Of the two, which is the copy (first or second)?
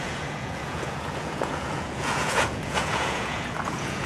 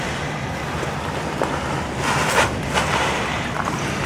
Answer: first